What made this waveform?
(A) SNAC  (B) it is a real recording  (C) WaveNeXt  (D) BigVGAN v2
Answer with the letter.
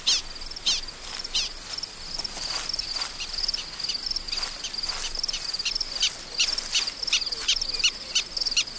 B